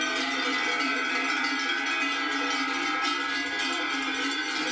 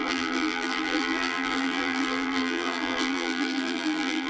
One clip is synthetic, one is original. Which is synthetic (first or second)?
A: second